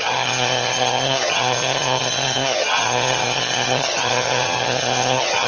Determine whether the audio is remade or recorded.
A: remade